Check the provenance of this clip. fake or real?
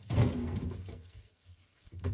fake